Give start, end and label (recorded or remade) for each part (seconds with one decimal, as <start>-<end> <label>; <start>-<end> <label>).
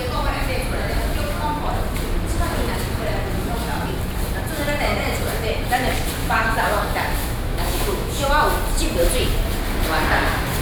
0.0-6.2 recorded; 6.2-6.8 remade; 6.8-7.2 recorded; 7.2-8.3 remade; 8.3-10.6 recorded